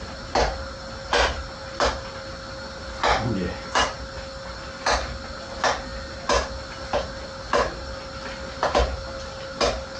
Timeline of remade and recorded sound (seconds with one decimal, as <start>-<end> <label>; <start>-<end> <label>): 0.0-10.0 recorded